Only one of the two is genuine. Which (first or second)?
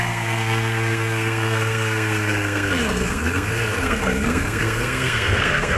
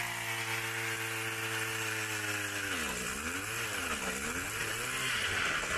second